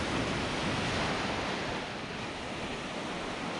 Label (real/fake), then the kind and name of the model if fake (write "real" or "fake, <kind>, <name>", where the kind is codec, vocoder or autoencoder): real